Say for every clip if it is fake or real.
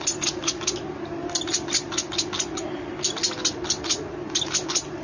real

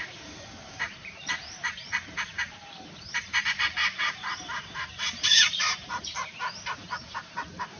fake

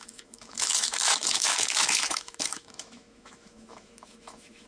fake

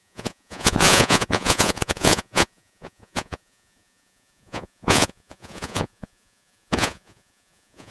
fake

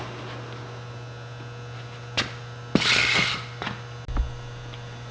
real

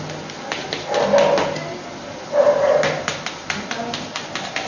real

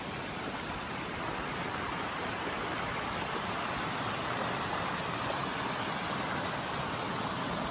real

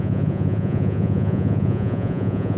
fake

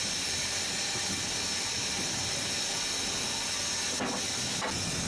real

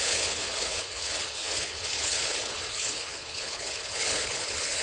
fake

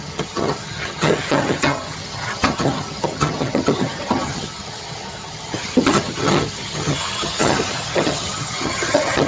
fake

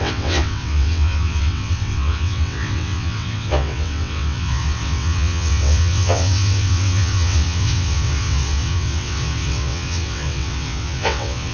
fake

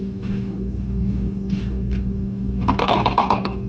fake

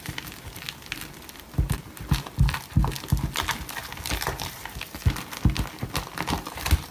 real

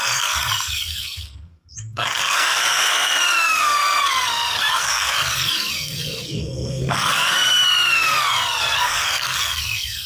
fake